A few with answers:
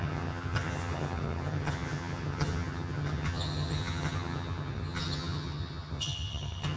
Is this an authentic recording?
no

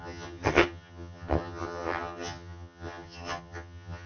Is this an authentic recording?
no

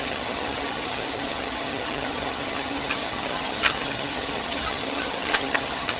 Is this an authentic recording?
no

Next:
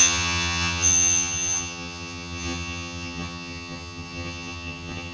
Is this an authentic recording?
no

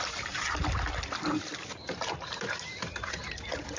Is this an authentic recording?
yes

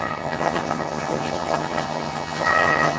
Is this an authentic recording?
no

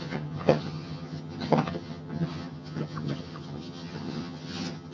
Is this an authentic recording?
no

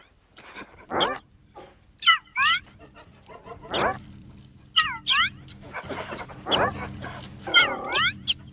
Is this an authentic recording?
yes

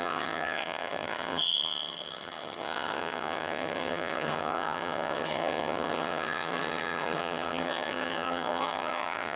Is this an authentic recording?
no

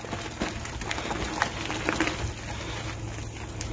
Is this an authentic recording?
yes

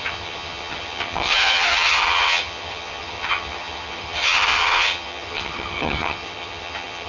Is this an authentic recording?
no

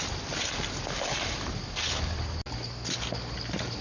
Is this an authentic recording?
yes